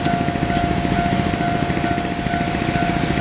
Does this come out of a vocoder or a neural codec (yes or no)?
no